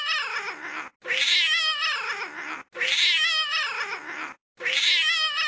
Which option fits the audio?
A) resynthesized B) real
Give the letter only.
B